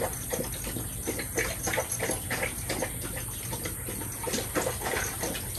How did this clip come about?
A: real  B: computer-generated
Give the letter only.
A